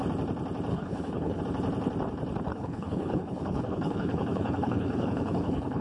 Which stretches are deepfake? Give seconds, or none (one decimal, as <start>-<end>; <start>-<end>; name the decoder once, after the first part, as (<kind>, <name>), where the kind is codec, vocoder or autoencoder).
0.7-1.4 (codec, HILCodec); 2.5-5.8

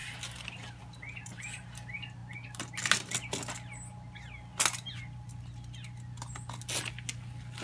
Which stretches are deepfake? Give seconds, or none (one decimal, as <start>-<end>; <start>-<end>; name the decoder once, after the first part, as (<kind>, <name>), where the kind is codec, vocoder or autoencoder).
none

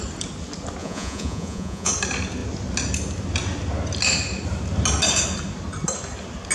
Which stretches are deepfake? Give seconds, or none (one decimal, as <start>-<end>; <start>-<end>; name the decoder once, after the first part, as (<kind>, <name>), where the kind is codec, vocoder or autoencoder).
0.8-1.9 (vocoder, Vocos)

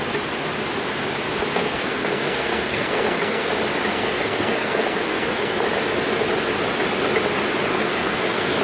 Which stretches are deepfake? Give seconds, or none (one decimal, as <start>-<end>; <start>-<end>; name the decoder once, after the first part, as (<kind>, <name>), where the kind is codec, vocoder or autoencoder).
1.6-3.5 (codec, SNAC); 3.9-5.6; 7.7-8.6

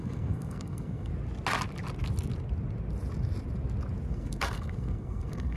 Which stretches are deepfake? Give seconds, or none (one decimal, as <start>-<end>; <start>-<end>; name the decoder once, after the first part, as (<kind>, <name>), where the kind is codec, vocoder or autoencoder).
0.0-1.1 (codec, SNAC); 4.1-5.6